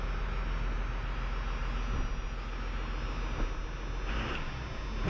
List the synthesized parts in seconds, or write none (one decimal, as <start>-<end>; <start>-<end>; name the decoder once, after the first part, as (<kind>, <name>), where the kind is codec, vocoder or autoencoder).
none